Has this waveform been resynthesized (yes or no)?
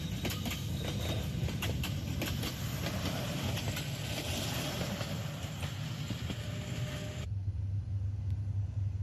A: no